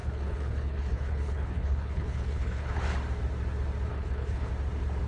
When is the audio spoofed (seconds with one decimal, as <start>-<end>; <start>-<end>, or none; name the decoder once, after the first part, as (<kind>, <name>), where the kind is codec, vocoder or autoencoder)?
0.0-2.8 (codec, HILCodec); 3.9-4.5